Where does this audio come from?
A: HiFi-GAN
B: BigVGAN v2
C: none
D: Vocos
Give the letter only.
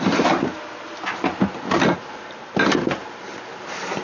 B